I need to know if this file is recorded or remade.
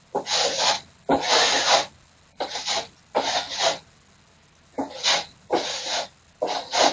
recorded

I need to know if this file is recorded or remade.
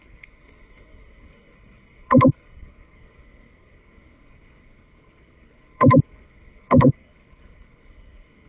remade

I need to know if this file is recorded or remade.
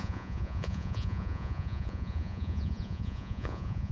remade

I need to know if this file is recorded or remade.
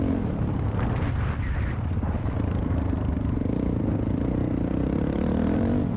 remade